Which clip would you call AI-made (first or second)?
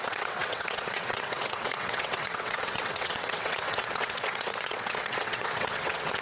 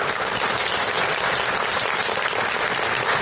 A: first